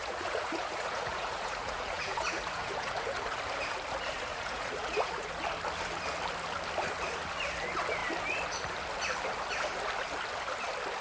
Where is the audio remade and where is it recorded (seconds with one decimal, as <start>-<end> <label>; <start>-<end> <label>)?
0.0-3.4 remade; 3.4-4.3 recorded; 4.3-5.3 remade; 5.3-11.0 recorded